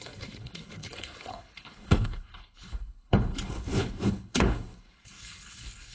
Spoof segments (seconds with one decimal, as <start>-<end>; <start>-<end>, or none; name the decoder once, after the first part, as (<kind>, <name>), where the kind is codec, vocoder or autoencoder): 0.0-5.9 (codec, HILCodec)